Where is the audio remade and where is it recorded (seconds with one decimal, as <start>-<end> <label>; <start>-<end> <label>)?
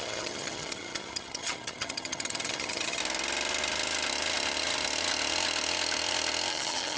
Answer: 0.0-3.0 remade; 3.0-6.5 recorded; 6.5-7.0 remade